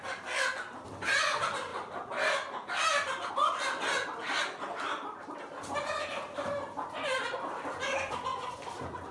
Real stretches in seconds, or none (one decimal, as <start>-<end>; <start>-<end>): 0.0-8.3